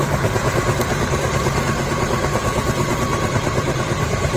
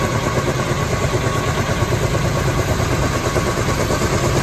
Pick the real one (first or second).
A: second